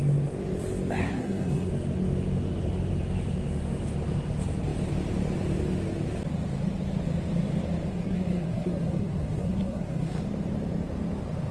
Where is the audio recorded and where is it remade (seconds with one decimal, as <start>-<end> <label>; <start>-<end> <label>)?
0.0-1.0 recorded; 1.0-1.7 remade; 1.7-7.9 recorded; 7.9-10.2 remade; 10.2-11.5 recorded